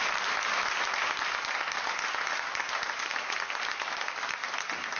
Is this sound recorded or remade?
recorded